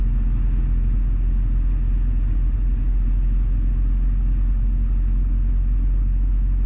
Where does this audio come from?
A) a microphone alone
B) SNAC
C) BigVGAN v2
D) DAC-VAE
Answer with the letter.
A